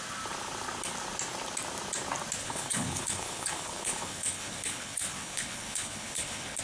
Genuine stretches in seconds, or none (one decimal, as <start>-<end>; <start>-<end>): 0.0-2.4